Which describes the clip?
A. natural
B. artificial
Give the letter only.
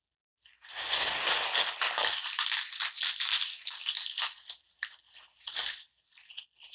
A